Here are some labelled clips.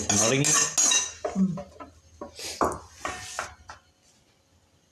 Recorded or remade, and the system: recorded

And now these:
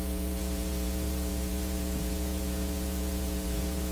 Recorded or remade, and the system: remade, vocoder, Vocos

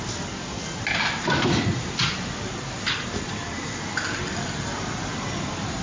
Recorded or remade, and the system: recorded